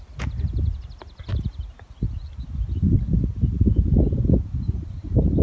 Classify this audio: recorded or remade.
recorded